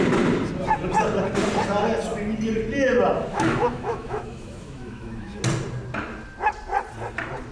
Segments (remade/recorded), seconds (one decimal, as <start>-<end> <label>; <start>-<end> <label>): 0.0-3.3 recorded; 3.3-5.4 remade; 5.4-7.5 recorded